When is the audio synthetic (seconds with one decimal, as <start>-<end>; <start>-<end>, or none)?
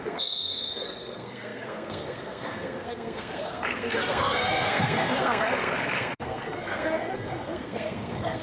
0.0-8.4